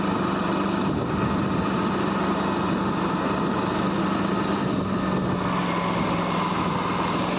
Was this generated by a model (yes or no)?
no